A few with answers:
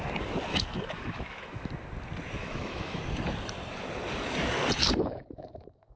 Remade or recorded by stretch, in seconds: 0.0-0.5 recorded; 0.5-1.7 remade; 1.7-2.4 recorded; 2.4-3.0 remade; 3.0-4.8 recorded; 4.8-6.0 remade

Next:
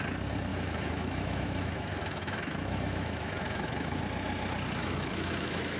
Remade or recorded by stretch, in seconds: 0.0-0.5 recorded; 0.5-4.0 remade; 4.0-4.8 recorded; 4.8-5.8 remade

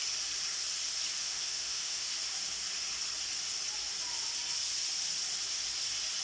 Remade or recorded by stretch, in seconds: 0.0-1.2 recorded; 1.2-2.1 remade; 2.1-6.2 recorded

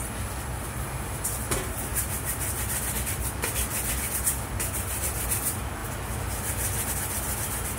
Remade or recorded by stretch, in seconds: 0.0-7.8 recorded